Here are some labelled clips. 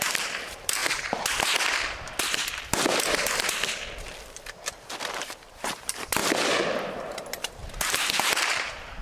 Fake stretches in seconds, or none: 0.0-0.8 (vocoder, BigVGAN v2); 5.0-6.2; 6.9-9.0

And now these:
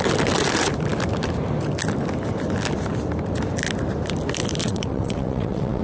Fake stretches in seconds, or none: 4.6-5.8 (vocoder, WaveNeXt)

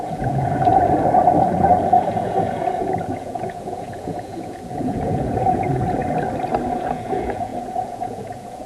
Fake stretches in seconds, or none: 0.0-6.0 (vocoder, Vocos); 6.7-8.7

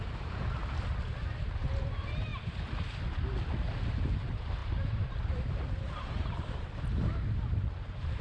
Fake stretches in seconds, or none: 0.0-0.6 (vocoder, BigVGAN v2); 1.3-2.3; 3.9-8.2